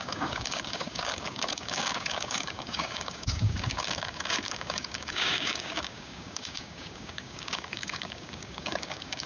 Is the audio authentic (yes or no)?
no